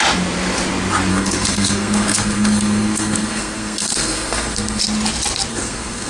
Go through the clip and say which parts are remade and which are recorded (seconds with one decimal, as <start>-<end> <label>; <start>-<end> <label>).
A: 0.0-1.1 recorded; 1.1-4.8 remade; 4.8-5.5 recorded; 5.5-6.1 remade